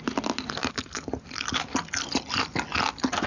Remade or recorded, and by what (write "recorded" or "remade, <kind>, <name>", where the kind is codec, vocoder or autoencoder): recorded